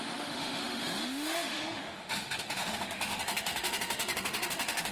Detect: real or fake fake